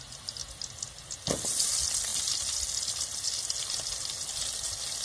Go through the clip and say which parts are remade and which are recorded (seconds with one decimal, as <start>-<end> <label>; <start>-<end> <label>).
0.0-5.0 recorded